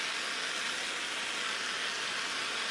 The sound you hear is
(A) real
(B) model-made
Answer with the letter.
A